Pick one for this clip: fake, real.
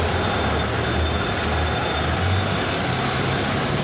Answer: real